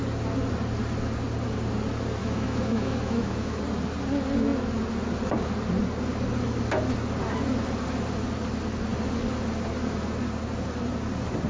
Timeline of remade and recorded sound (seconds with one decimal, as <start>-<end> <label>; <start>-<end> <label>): 0.0-2.2 recorded; 2.2-3.6 remade; 3.6-11.5 recorded